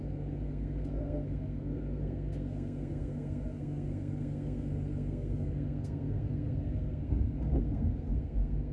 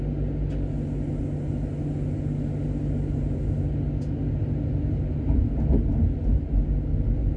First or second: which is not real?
first